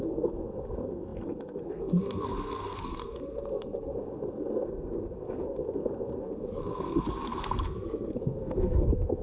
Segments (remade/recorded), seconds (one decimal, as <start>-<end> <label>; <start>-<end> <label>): 0.0-9.2 remade

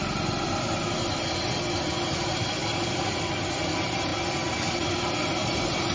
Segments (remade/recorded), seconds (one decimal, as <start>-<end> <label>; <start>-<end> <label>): 0.0-5.9 recorded

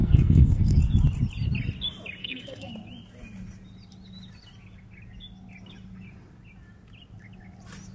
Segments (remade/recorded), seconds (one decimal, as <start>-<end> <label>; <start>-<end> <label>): 0.0-0.8 remade; 0.8-2.2 recorded; 2.2-2.7 remade; 2.7-7.9 recorded

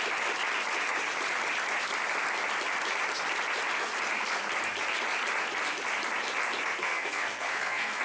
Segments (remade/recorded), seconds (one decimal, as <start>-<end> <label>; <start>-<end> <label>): 0.0-6.8 recorded; 6.8-8.0 remade

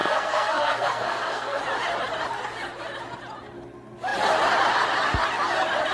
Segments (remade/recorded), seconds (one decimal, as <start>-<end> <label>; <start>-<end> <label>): 0.0-1.6 remade; 1.6-5.9 recorded

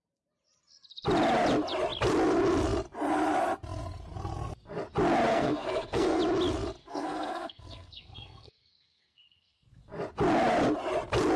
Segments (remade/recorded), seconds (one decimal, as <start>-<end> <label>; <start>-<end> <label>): 0.0-5.3 recorded; 5.3-6.2 remade; 6.2-6.8 recorded; 6.8-9.8 remade; 9.8-11.4 recorded